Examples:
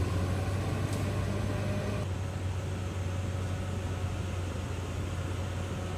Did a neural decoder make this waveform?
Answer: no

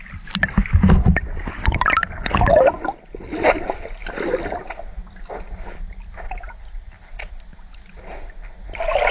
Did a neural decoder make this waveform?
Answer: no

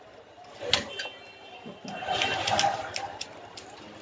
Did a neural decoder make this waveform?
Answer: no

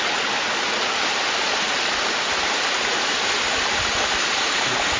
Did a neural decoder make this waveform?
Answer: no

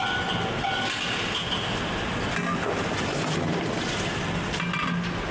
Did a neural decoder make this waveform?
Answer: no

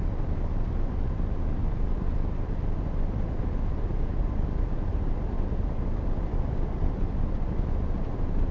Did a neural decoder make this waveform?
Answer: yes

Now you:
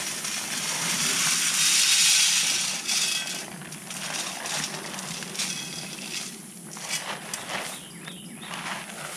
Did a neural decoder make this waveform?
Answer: no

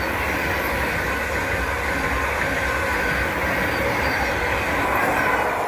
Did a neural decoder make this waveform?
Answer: no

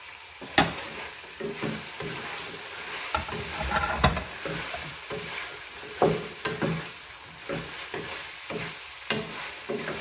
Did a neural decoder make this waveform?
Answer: no